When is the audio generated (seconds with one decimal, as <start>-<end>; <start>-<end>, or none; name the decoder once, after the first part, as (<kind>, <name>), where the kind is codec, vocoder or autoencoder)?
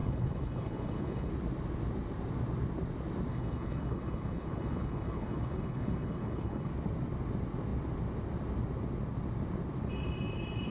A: 0.0-1.3 (codec, HILCodec); 3.3-6.7